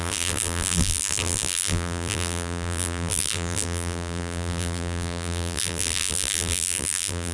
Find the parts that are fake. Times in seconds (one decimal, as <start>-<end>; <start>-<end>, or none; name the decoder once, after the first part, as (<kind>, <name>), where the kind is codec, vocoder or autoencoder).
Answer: 0.0-7.3 (vocoder, BigVGAN v2)